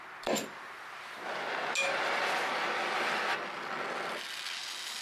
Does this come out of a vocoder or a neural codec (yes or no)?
no